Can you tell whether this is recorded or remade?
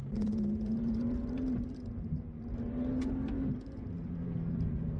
remade